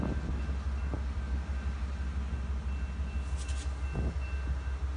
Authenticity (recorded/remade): recorded